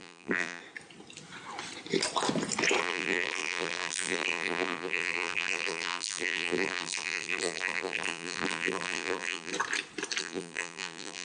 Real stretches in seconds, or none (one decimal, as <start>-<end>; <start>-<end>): 0.6-2.8; 9.5-10.2